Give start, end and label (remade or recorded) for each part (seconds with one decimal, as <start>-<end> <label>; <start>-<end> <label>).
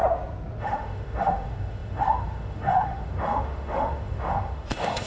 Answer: 0.0-0.6 recorded; 0.6-5.1 remade